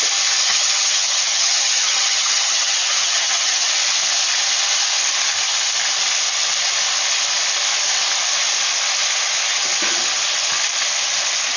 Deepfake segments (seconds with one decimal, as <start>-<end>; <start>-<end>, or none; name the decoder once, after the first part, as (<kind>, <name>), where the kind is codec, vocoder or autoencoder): 0.4-3.7 (vocoder, HiFi-GAN)